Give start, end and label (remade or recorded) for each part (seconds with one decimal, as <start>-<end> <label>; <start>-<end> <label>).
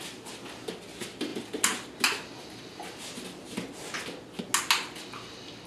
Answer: 0.0-5.7 recorded